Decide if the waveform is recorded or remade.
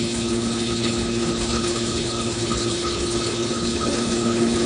remade